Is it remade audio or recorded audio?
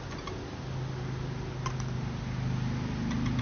recorded